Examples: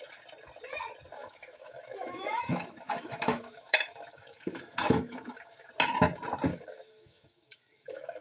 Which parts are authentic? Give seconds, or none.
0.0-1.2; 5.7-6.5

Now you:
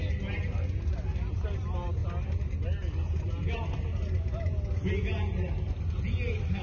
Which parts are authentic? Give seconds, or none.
0.0-6.6

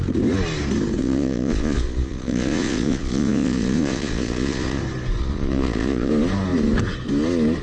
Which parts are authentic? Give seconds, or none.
0.0-1.0; 4.8-5.2; 6.1-7.6

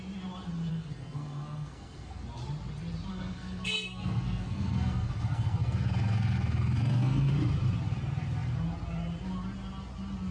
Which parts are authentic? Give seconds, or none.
0.0-0.7; 2.2-3.1; 7.3-10.3

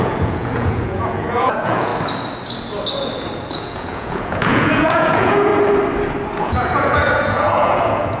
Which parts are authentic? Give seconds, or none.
1.9-3.5; 5.5-6.4

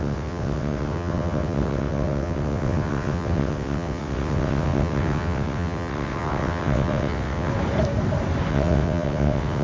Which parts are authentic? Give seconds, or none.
7.5-8.5

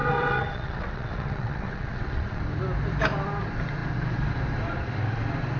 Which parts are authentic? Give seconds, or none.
2.4-5.6

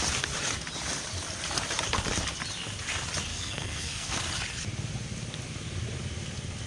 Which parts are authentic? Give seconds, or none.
0.0-3.3; 4.2-6.7